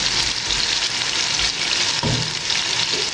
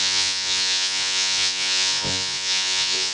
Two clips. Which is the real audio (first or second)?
first